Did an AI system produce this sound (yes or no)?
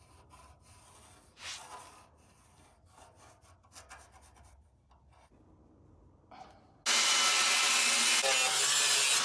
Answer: no